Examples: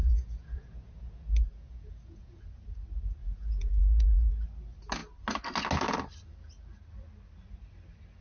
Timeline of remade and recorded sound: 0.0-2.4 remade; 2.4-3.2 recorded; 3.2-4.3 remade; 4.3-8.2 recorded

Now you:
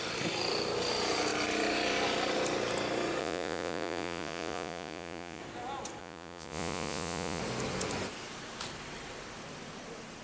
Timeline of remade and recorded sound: 0.0-3.2 recorded; 3.2-5.4 remade; 5.4-6.0 recorded; 6.0-7.4 remade; 7.4-10.2 recorded

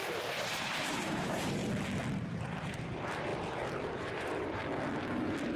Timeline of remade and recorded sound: 0.0-1.6 remade; 1.6-2.2 recorded; 2.2-4.6 remade; 4.6-5.6 recorded

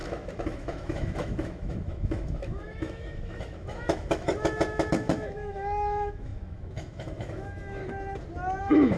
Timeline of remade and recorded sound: 0.0-7.8 remade; 7.8-8.6 recorded; 8.6-9.0 remade

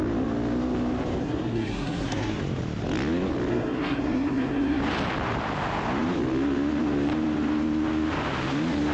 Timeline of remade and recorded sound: 0.0-1.2 recorded; 1.2-2.4 remade; 2.4-3.5 recorded; 3.5-4.8 remade; 4.8-8.9 recorded

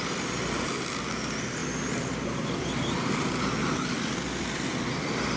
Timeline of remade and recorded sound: 0.0-5.4 recorded

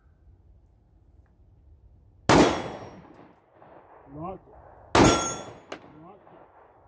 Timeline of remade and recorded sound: 0.0-6.9 recorded